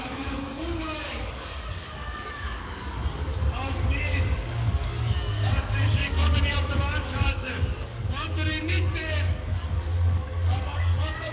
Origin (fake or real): fake